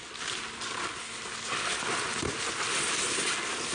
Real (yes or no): yes